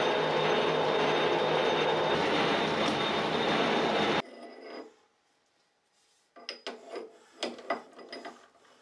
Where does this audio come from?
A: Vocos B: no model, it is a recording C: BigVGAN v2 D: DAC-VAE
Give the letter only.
B